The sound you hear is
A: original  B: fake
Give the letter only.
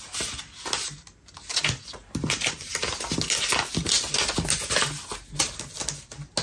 A